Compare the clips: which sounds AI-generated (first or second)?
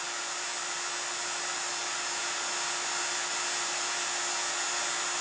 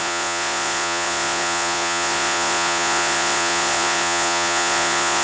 second